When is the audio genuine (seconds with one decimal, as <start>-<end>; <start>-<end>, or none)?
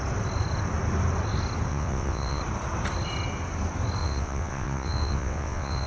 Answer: 0.0-1.7; 2.4-4.0